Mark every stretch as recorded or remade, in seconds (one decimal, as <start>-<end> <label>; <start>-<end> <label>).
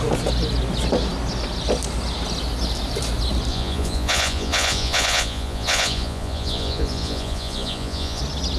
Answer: 0.0-3.5 recorded; 3.5-8.2 remade; 8.2-8.6 recorded